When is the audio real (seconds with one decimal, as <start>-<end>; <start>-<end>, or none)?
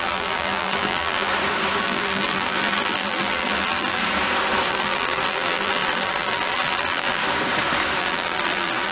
1.3-1.8; 4.0-4.7; 7.2-8.0